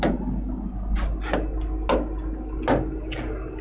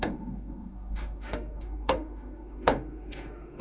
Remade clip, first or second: second